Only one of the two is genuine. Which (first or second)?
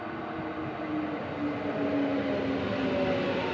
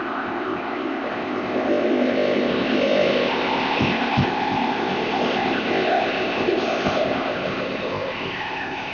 first